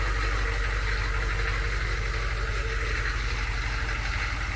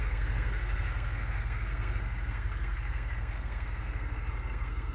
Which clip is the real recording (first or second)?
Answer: first